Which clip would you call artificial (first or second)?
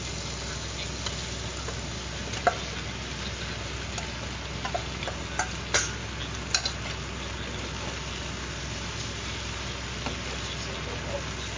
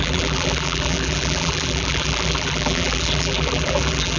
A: second